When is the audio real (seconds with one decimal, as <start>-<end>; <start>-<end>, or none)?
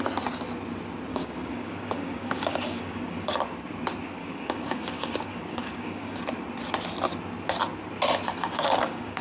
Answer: 0.0-1.1; 3.4-4.2; 6.2-8.3